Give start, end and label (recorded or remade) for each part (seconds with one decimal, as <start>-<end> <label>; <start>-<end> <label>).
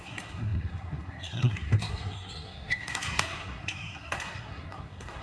0.0-5.2 remade